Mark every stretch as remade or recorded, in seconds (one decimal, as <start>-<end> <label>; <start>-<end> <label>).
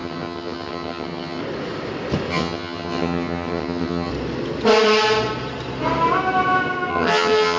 0.0-1.4 remade; 1.4-2.3 recorded; 2.3-4.1 remade; 4.1-6.9 recorded; 6.9-7.6 remade